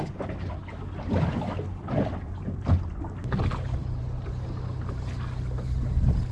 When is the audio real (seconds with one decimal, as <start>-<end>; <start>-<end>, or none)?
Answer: 0.0-6.3